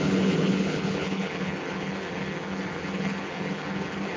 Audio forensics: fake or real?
fake